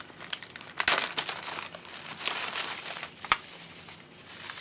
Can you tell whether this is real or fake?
real